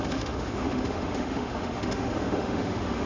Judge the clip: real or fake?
fake